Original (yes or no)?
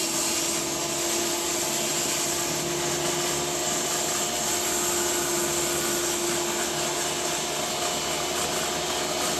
yes